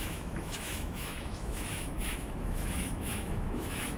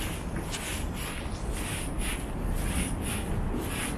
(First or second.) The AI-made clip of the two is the first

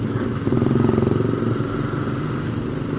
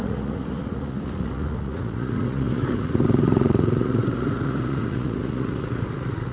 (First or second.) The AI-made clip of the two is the second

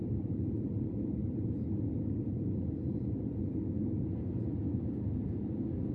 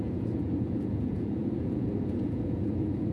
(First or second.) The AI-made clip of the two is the second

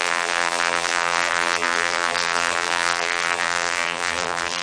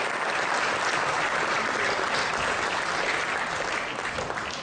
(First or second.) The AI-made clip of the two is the first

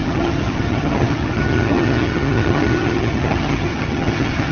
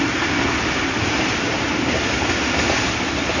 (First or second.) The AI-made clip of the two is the first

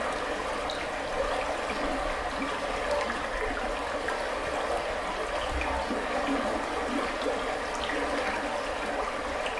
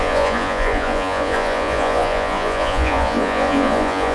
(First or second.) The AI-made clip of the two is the second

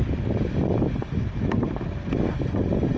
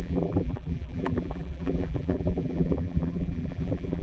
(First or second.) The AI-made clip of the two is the second